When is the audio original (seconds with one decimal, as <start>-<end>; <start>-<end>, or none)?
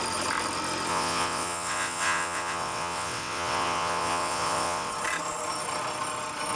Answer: 0.0-0.9; 4.9-6.6